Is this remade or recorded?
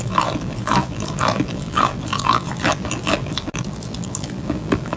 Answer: remade